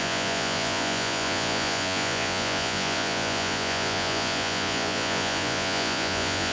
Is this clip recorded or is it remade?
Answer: remade